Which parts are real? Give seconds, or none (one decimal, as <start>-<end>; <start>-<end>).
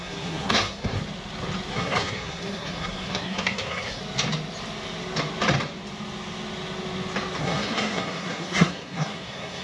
1.0-1.7; 4.0-7.4